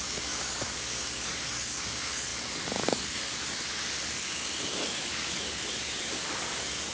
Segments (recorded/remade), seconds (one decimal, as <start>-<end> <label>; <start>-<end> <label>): 0.0-6.9 remade